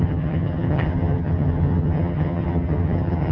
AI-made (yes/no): yes